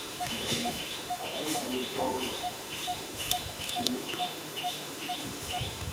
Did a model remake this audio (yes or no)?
yes